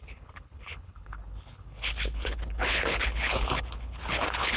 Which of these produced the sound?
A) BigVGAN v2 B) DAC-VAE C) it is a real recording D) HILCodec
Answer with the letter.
D